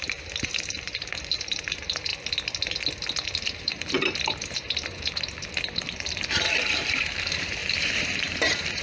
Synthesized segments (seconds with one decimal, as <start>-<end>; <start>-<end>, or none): 0.0-2.1; 3.6-8.8